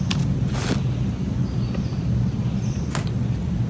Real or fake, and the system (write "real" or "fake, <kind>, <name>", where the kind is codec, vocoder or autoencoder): real